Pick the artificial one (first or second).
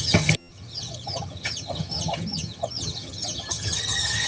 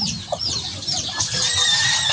first